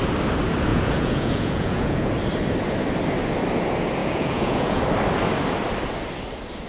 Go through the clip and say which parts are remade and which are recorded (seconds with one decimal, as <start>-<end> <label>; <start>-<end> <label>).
0.0-0.7 recorded; 0.7-2.1 remade; 2.1-4.0 recorded; 4.0-4.8 remade; 4.8-6.7 recorded